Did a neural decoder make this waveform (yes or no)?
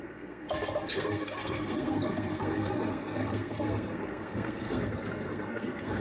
yes